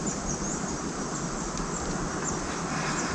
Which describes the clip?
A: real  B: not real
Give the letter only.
A